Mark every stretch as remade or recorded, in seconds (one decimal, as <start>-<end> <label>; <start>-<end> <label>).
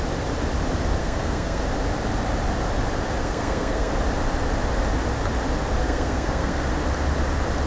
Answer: 0.0-1.0 recorded; 1.0-1.6 remade; 1.6-3.2 recorded; 3.2-3.9 remade; 3.9-5.8 recorded; 5.8-6.7 remade; 6.7-7.7 recorded